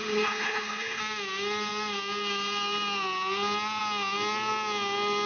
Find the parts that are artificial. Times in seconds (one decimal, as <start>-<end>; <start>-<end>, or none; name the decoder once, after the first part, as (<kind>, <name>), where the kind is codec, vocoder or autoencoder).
0.0-1.0 (codec, HILCodec)